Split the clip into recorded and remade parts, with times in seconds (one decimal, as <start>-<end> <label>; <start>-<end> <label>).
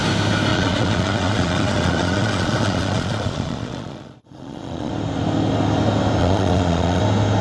0.0-0.5 recorded; 0.5-4.9 remade; 4.9-6.2 recorded; 6.2-7.0 remade; 7.0-7.4 recorded